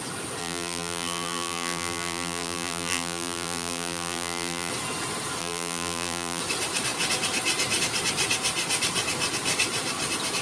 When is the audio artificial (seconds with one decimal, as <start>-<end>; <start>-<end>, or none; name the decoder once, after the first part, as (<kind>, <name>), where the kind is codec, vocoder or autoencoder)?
0.4-4.7 (vocoder, BigVGAN v2); 5.4-6.4